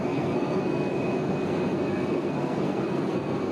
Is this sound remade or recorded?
remade